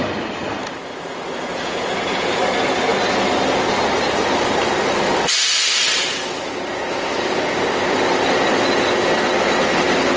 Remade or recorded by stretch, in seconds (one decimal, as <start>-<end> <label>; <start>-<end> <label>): 0.0-1.5 recorded; 1.5-2.4 remade; 2.4-10.2 recorded